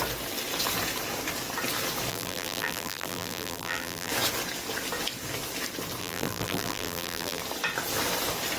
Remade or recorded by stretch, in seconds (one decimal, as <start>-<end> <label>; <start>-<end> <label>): 0.0-2.1 recorded; 2.1-4.1 remade; 4.1-6.0 recorded; 6.0-7.4 remade; 7.4-8.6 recorded